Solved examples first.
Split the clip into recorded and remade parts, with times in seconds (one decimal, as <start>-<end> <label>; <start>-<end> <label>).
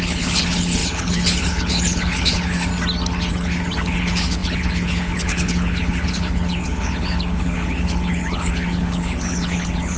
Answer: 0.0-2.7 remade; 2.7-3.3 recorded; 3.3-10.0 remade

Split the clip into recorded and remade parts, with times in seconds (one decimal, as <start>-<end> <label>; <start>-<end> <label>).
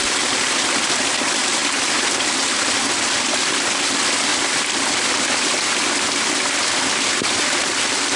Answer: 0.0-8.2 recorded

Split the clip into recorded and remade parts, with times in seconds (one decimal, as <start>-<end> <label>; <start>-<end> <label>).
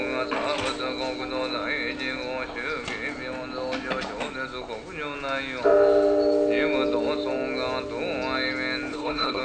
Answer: 0.0-8.9 recorded; 8.9-9.4 remade